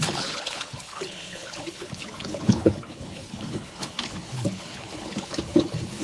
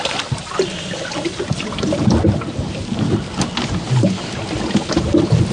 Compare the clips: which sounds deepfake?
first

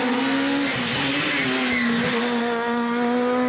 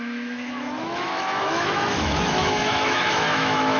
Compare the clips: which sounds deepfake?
second